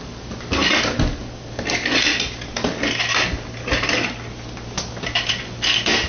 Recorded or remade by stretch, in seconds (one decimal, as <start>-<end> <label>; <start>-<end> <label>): 0.0-6.1 recorded